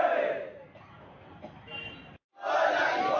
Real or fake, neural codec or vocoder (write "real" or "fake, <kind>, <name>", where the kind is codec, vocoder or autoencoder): real